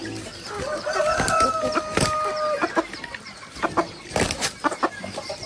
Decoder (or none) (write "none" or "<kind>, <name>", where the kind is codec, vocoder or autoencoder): none